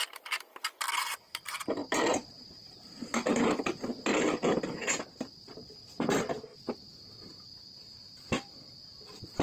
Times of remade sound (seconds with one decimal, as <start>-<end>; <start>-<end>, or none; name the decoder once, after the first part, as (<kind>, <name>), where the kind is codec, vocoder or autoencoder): 1.8-3.1 (vocoder, BigVGAN v2)